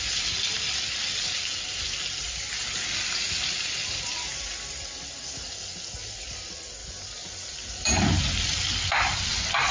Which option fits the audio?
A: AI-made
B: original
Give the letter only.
B